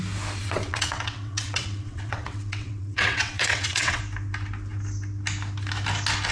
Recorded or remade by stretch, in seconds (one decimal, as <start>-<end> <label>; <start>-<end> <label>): 0.0-0.4 recorded; 0.4-4.0 remade; 4.0-6.3 recorded